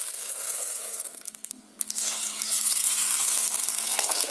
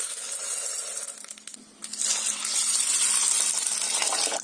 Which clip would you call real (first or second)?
second